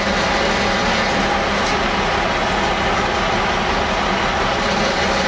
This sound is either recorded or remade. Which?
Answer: recorded